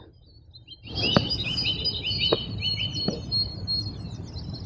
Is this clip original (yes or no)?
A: yes